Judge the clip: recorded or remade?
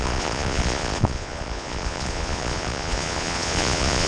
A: remade